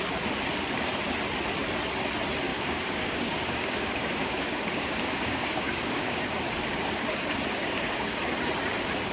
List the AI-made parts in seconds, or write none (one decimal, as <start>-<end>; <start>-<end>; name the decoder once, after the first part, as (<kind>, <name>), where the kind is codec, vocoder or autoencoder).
2.5-6.3 (codec, DAC); 7.6-8.2